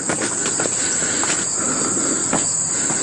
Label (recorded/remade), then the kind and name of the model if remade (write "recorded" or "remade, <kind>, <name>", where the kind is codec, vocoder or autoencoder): recorded